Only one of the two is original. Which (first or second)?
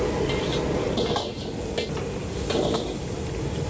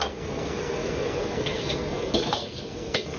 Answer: first